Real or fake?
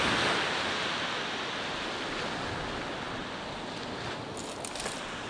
real